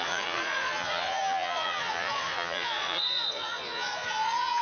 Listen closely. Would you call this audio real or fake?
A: fake